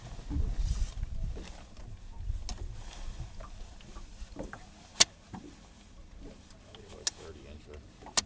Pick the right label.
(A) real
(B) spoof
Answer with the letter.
A